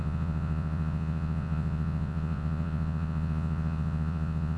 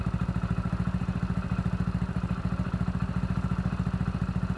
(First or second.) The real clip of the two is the second